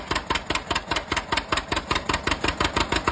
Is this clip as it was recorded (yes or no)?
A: yes